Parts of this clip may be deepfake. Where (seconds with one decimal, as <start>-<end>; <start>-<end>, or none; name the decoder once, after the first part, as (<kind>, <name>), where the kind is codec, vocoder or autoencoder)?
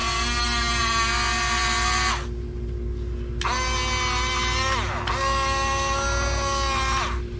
none